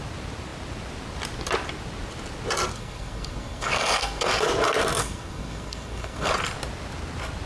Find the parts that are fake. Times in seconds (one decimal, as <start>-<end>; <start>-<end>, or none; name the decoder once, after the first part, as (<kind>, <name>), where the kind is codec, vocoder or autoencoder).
2.7-4.3 (codec, SNAC); 5.0-6.3